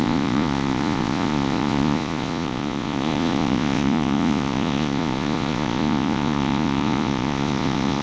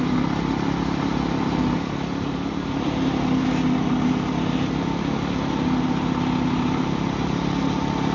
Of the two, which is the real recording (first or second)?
second